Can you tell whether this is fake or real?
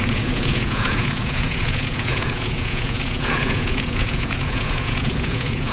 fake